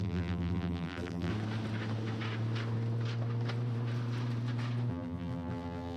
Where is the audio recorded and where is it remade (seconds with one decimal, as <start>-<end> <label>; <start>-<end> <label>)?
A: 0.0-1.3 remade; 1.3-4.9 recorded; 4.9-6.0 remade